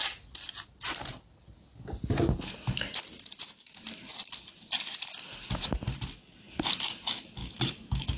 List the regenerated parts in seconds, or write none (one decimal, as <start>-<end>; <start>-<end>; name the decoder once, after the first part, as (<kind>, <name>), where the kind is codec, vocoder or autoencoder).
7.4-8.2 (autoencoder, DAC-VAE)